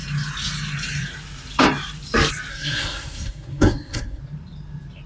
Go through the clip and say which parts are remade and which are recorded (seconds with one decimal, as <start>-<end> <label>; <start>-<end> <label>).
0.0-2.5 recorded; 2.5-4.2 remade; 4.2-5.1 recorded